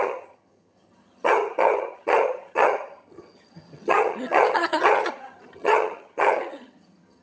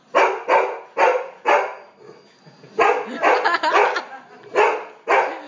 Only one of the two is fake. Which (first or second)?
first